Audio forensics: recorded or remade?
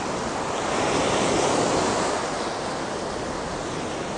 recorded